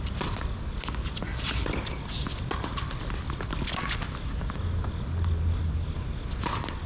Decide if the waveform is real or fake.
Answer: real